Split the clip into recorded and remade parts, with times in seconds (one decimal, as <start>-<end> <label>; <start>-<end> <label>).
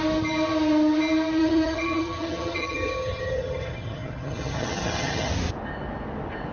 0.0-1.4 recorded; 1.4-5.3 remade; 5.3-6.5 recorded